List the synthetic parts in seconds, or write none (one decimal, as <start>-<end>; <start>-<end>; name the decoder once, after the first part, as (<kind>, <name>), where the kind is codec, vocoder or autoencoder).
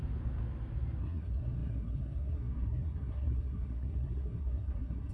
1.0-5.1 (codec, SNAC)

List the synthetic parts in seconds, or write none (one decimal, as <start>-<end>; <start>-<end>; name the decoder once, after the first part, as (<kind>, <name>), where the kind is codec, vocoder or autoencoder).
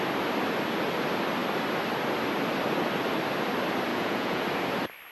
3.9-4.4 (vocoder, Vocos)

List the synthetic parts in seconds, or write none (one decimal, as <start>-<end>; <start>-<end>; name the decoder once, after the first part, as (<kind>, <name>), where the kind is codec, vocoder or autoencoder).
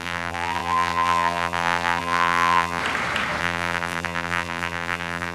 0.0-2.8 (vocoder, BigVGAN v2); 3.4-5.3